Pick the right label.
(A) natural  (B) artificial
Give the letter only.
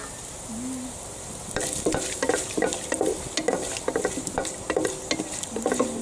A